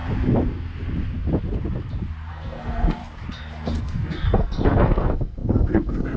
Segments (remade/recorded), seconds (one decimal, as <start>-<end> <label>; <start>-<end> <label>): 0.0-2.3 recorded; 2.3-3.0 remade; 3.0-3.8 recorded; 3.8-6.2 remade